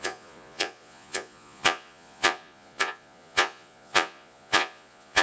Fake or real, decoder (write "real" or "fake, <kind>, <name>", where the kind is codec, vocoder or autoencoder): fake, vocoder, Vocos